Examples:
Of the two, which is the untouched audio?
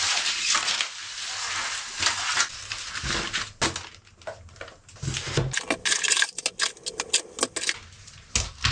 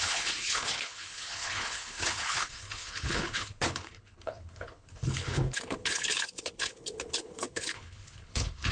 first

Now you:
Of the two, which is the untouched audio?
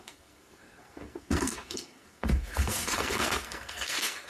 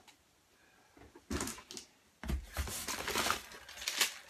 second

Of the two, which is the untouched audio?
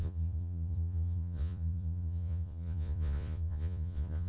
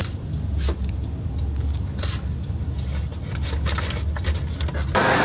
second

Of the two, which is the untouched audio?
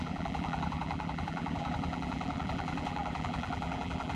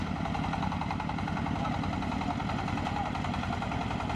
second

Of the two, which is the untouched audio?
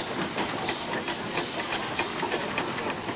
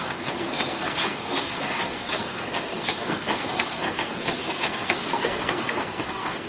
first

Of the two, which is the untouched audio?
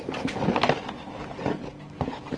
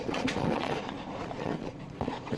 first